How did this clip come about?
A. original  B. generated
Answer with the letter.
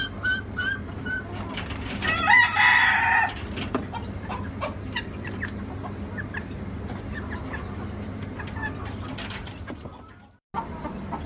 A